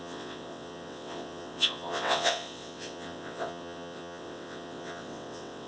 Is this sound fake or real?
fake